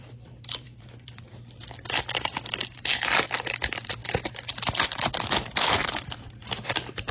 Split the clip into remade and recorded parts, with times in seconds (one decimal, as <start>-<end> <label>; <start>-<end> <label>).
0.0-2.6 remade; 2.6-3.1 recorded; 3.1-4.0 remade; 4.0-4.9 recorded; 4.9-7.1 remade